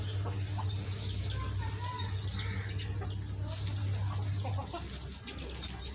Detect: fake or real real